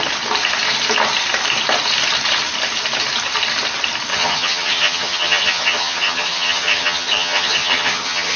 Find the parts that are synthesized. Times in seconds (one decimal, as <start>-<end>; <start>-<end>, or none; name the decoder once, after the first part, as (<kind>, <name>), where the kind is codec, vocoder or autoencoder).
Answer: 4.1-8.4 (vocoder, HiFi-GAN)